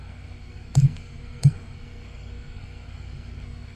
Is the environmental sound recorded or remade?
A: remade